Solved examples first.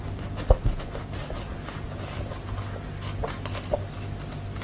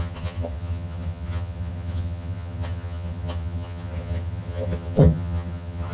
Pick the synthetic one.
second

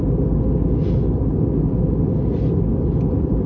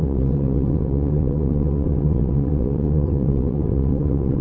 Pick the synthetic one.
second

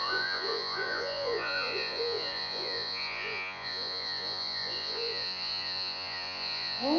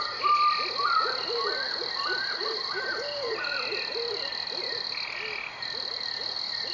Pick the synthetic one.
first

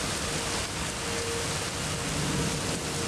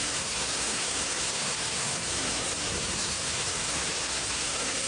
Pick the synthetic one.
second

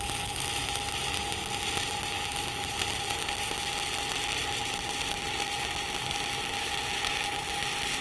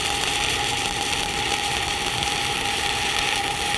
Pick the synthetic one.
second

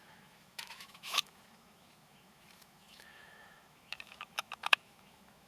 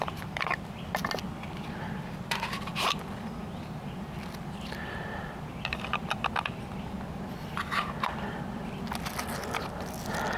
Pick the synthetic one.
first